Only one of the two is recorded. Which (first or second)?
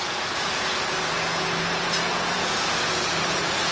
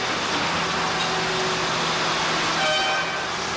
second